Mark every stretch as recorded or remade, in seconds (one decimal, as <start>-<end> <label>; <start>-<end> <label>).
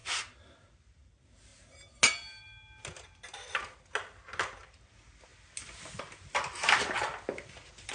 0.0-7.9 recorded